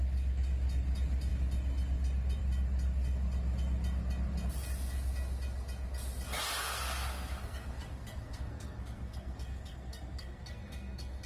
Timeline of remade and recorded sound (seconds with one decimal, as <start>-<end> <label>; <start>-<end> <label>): 0.0-6.6 recorded; 6.6-11.3 remade